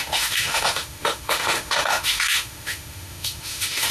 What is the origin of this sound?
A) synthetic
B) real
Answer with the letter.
A